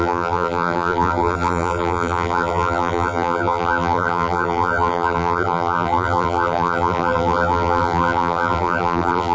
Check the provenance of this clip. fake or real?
fake